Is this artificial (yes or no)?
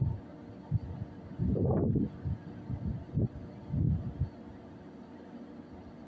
no